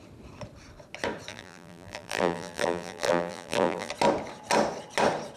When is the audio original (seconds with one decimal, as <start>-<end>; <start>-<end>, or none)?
0.0-1.3; 3.9-5.4